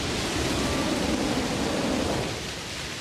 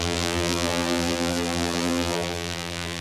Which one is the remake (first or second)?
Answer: second